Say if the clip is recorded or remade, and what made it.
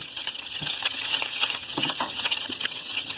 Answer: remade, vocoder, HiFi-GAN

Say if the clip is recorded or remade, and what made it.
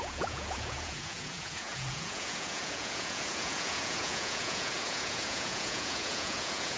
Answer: remade, vocoder, Vocos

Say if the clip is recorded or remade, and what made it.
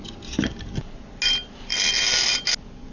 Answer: recorded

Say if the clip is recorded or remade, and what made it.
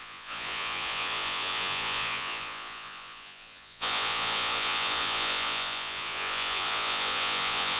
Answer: remade, vocoder, Vocos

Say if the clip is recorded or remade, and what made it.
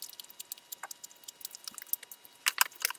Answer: recorded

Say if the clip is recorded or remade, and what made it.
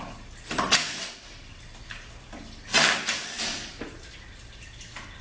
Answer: recorded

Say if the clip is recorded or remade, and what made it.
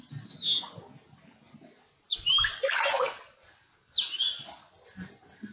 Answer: recorded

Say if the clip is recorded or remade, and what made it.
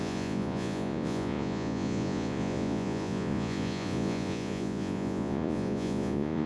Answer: remade, vocoder, Vocos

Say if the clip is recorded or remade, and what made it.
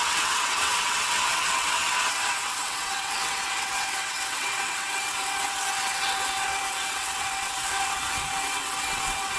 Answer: remade, vocoder, WaveNeXt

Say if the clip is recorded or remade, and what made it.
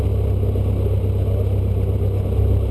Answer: recorded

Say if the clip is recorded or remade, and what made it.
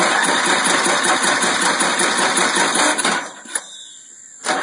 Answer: recorded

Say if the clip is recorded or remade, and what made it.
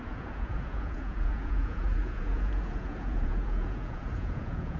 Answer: remade, vocoder, Vocos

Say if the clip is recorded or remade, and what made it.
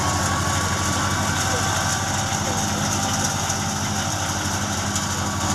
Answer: recorded